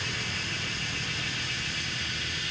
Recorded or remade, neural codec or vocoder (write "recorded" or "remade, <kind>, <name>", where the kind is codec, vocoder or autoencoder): recorded